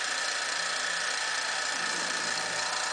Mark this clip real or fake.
real